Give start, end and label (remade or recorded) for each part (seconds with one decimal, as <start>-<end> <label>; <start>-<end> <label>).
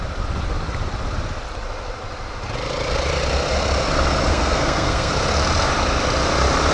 0.0-4.3 recorded; 4.3-5.1 remade; 5.1-6.7 recorded